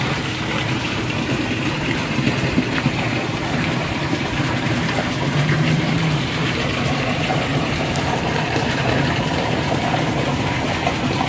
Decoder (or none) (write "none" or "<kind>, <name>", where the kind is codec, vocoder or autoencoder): vocoder, BigVGAN v2